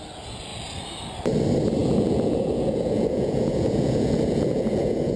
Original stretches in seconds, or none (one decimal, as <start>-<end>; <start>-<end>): 0.0-1.8